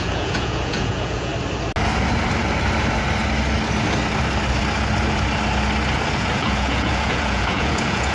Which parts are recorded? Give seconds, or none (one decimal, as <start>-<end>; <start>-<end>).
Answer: 1.3-6.2